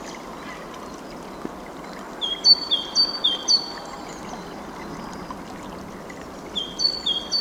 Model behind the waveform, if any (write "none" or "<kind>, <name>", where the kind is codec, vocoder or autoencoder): none